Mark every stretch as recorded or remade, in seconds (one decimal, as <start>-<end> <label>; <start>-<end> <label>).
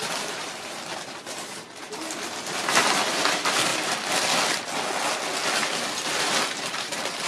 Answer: 0.0-3.7 remade; 3.7-6.5 recorded; 6.5-7.3 remade